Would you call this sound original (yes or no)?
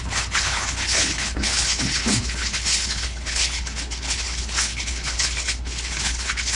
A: no